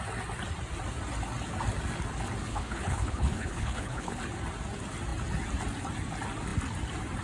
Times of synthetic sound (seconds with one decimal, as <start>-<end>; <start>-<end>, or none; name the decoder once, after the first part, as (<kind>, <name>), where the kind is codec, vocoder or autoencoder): 2.5-4.2 (codec, HILCodec)